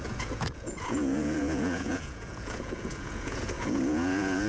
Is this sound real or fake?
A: fake